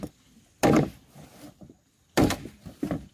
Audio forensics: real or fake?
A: real